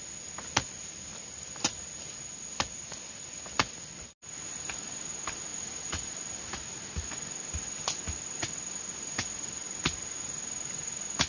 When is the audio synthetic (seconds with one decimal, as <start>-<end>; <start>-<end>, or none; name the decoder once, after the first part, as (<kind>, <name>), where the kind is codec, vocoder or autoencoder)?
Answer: 5.5-6.5 (vocoder, BigVGAN v2)